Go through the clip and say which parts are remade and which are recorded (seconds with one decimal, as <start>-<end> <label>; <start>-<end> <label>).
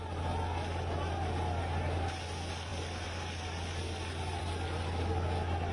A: 0.0-2.7 recorded; 2.7-4.4 remade; 4.4-5.7 recorded